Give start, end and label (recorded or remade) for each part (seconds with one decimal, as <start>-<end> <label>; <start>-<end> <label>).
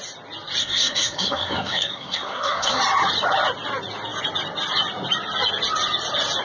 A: 0.0-0.6 recorded; 0.6-2.8 remade; 2.8-6.4 recorded